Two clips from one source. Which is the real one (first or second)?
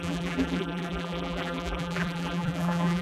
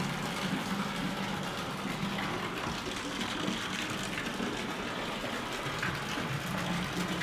second